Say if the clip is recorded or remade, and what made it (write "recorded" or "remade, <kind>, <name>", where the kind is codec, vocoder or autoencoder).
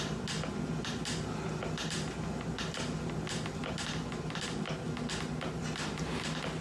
recorded